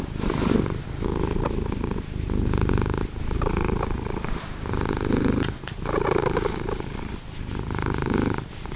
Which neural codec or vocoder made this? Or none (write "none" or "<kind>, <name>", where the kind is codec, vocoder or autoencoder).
vocoder, BigVGAN v2